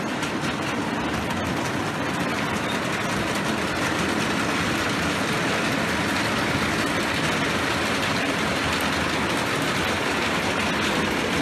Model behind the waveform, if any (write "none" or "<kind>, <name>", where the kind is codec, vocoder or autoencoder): none